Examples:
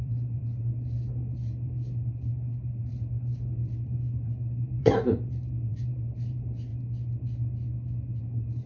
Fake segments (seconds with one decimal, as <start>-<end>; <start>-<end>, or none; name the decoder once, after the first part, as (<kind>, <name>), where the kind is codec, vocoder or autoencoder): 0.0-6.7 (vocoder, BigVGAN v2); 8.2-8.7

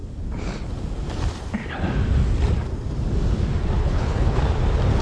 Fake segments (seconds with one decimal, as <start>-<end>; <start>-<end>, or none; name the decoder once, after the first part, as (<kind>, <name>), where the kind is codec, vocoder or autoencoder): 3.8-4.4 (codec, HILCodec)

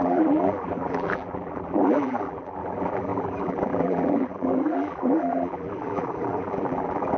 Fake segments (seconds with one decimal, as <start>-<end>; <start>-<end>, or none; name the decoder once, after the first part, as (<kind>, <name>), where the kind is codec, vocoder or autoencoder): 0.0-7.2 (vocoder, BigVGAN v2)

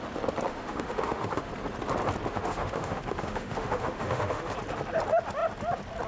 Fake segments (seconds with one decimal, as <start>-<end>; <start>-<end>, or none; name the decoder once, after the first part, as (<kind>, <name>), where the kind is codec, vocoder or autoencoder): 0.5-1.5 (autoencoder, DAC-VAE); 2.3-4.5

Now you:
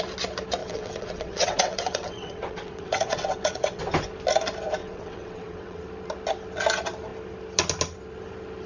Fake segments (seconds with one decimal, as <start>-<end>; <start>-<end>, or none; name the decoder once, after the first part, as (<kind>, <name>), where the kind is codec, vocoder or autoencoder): 0.6-3.8 (vocoder, WaveNeXt); 4.8-5.8

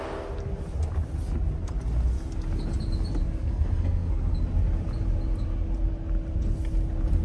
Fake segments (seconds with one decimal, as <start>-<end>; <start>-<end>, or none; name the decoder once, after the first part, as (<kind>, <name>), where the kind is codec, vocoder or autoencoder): 3.4-4.3 (codec, SNAC)